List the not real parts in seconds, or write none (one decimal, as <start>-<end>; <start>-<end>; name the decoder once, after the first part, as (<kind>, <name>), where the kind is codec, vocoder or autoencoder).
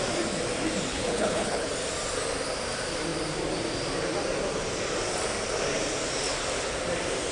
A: 0.9-1.7 (codec, HILCodec)